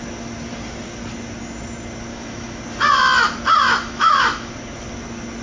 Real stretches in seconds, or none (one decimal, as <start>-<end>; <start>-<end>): 0.0-2.1; 2.6-3.7; 4.5-5.4